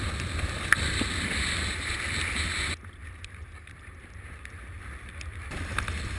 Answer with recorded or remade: remade